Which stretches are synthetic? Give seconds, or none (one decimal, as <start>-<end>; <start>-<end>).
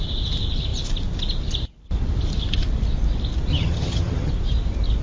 3.5-4.3